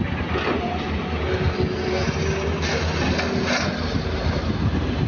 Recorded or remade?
recorded